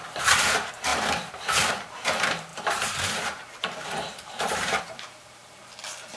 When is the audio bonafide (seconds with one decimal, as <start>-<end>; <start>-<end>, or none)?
none